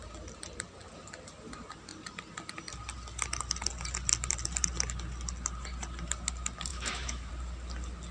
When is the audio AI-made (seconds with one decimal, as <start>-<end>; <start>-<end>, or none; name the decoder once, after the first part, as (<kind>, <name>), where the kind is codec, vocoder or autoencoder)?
6.7-7.3 (autoencoder, DAC-VAE)